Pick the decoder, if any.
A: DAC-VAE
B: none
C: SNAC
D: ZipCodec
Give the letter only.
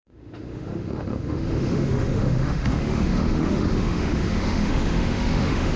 A